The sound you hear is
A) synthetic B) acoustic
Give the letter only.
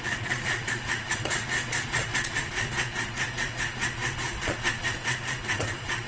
A